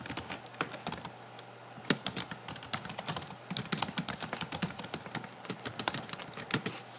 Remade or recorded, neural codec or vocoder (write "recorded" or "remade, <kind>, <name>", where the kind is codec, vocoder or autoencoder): remade, vocoder, BigVGAN v2